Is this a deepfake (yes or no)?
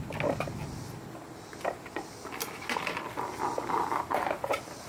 no